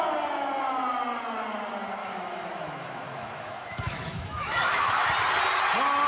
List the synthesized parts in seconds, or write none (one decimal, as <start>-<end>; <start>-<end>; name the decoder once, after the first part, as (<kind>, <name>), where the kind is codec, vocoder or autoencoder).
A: 2.0-5.1 (autoencoder, DAC-VAE)